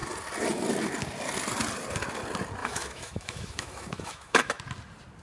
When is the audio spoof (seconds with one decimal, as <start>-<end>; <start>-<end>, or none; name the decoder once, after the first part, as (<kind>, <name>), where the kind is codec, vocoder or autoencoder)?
2.6-4.6 (autoencoder, DAC-VAE)